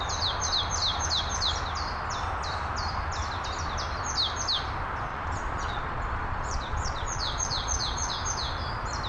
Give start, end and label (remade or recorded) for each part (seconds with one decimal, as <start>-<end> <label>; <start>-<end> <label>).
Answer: 0.0-5.1 recorded; 5.1-8.1 remade; 8.1-9.1 recorded